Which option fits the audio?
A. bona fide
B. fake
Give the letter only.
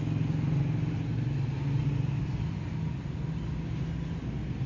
A